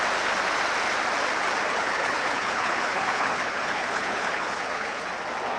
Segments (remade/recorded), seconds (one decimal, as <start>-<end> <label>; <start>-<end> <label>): 0.0-1.7 recorded; 1.7-5.1 remade; 5.1-5.6 recorded